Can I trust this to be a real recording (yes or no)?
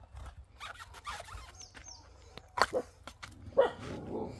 yes